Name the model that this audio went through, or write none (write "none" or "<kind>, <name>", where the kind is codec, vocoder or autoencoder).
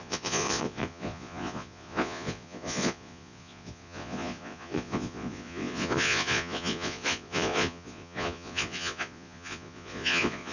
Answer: vocoder, Vocos